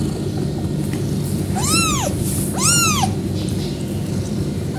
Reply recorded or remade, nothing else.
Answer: recorded